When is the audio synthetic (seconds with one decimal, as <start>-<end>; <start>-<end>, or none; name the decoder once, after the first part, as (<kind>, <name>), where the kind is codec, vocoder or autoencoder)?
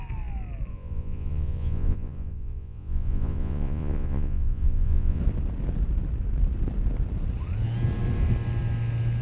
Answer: 0.7-5.2 (vocoder, Vocos)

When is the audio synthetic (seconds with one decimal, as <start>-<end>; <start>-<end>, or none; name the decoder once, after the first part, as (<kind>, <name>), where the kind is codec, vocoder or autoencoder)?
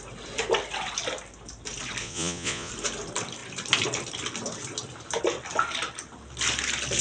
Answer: 2.0-2.7 (vocoder, Vocos)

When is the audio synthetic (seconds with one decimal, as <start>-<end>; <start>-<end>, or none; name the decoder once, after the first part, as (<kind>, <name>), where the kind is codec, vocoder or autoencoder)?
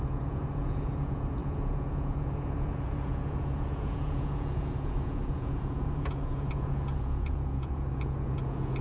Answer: 0.0-8.8 (vocoder, Vocos)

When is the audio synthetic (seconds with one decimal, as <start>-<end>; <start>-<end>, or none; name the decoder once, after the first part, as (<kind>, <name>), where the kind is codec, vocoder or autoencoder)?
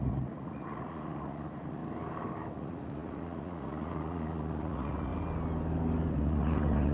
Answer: 0.0-1.8 (vocoder, Vocos); 2.5-5.1; 6.1-6.9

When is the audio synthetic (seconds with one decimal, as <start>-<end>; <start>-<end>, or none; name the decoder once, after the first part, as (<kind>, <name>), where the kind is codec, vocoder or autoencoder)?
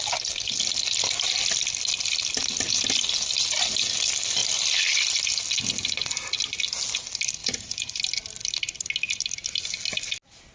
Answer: 7.4-8.0 (vocoder, Vocos)